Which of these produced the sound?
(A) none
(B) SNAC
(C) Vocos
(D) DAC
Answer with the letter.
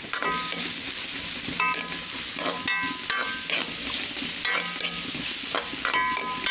A